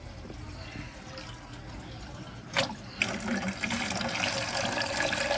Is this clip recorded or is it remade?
recorded